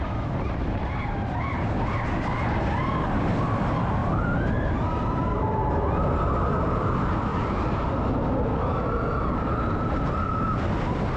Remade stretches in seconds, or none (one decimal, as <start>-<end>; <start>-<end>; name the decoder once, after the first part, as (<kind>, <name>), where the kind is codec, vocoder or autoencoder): 7.3-7.9 (vocoder, BigVGAN v2)